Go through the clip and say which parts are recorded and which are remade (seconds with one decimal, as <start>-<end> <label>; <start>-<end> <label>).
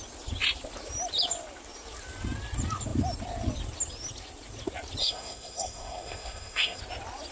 0.0-5.0 recorded; 5.0-6.8 remade; 6.8-7.3 recorded